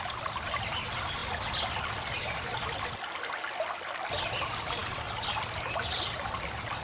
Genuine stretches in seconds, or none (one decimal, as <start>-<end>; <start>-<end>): 0.0-6.8